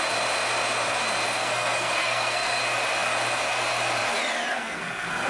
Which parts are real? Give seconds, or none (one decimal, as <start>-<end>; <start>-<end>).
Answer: 0.0-1.4; 2.6-4.5